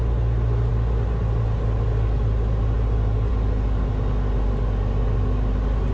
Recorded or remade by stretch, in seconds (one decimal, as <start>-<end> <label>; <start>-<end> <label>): 0.0-5.9 recorded